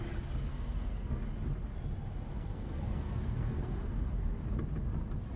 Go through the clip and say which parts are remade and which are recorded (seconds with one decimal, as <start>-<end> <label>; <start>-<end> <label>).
0.0-0.5 recorded; 0.5-1.2 remade; 1.2-2.3 recorded; 2.3-4.2 remade; 4.2-5.4 recorded